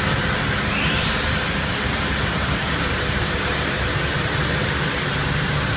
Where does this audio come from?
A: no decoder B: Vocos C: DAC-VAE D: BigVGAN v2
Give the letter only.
D